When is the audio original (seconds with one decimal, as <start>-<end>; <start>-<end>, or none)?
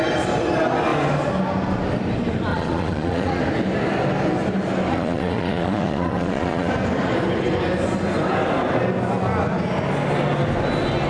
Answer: 0.0-2.5; 3.4-4.9; 6.7-11.1